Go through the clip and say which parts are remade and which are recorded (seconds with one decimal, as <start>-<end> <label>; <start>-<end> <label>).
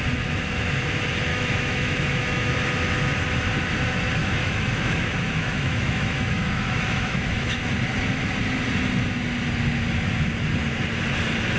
0.0-1.3 recorded; 1.3-2.5 remade; 2.5-4.2 recorded; 4.2-7.7 remade; 7.7-11.6 recorded